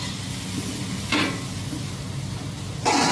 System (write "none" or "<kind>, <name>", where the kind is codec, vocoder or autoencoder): none